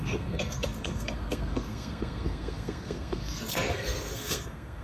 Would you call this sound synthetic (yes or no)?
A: yes